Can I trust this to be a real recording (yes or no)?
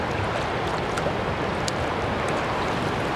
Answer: yes